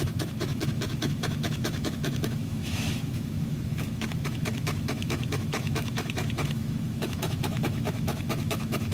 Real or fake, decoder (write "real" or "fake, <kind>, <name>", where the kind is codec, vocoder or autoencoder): fake, autoencoder, DAC-VAE